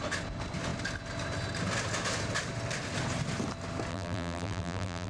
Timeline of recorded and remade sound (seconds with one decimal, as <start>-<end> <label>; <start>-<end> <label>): 0.0-3.9 recorded; 3.9-5.1 remade